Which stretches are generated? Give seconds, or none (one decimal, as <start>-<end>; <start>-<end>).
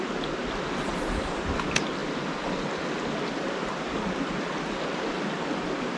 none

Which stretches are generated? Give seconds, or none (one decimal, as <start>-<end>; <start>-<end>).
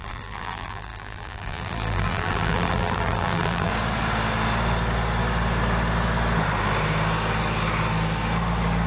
0.0-3.7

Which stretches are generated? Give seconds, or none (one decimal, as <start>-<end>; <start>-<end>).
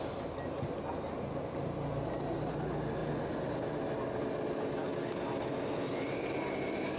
none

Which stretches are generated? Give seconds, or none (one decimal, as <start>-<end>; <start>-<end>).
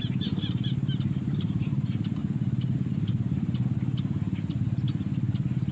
0.0-2.2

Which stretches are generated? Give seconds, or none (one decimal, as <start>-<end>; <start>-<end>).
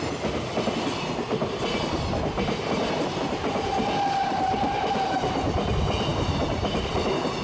4.2-5.5; 6.1-6.9